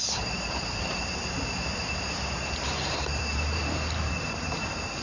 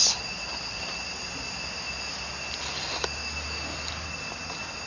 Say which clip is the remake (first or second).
first